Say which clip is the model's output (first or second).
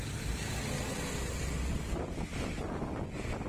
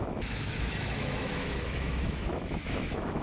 second